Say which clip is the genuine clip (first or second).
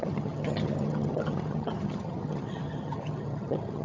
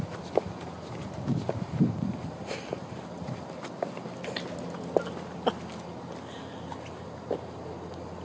second